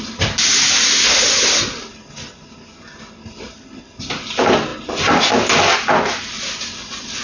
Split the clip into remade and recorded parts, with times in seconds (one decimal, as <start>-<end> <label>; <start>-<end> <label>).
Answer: 0.0-7.2 recorded